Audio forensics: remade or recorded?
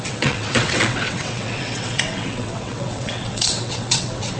remade